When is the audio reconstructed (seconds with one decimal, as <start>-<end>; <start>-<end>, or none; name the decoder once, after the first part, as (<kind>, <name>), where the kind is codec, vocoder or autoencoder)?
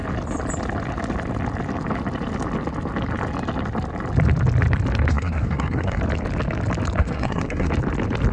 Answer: 5.1-6.0 (codec, SNAC); 7.0-7.7